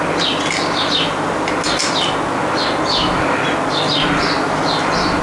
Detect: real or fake real